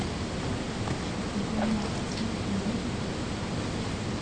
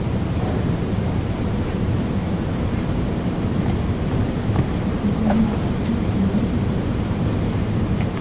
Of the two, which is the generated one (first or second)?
second